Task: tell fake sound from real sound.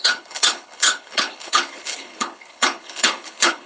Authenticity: fake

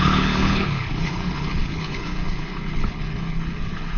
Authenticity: fake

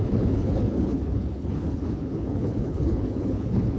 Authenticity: fake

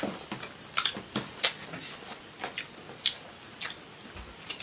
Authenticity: real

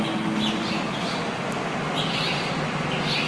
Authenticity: real